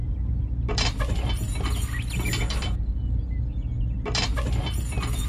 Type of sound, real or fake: real